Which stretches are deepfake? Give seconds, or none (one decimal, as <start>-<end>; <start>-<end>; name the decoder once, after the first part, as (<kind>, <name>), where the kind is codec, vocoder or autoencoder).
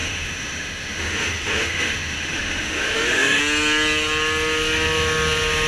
0.0-3.4 (autoencoder, DAC-VAE)